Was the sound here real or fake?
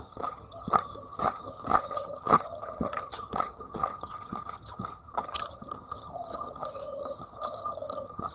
fake